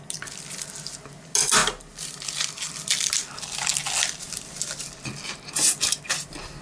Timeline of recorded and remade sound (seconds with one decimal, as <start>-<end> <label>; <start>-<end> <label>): 0.0-6.6 recorded